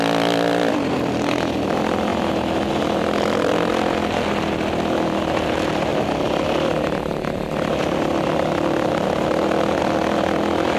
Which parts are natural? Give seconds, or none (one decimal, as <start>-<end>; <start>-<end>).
0.0-10.8